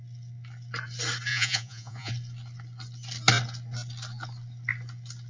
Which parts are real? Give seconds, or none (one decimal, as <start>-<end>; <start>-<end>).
0.0-1.3; 2.1-5.3